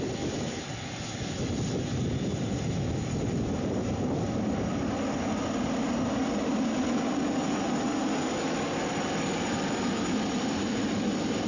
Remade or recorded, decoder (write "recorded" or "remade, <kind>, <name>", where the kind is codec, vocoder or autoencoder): recorded